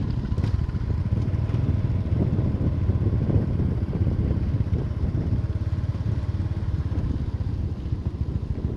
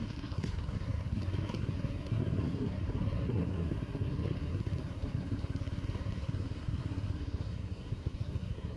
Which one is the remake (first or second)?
second